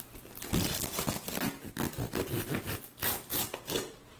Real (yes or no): yes